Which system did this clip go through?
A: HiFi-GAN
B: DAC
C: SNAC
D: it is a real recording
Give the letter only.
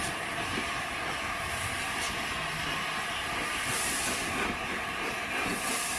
D